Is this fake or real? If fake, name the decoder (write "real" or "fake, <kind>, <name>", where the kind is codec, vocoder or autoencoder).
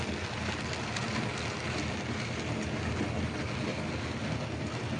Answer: real